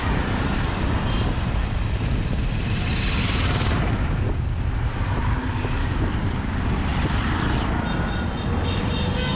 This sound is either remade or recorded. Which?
recorded